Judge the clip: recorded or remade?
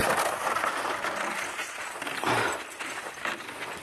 recorded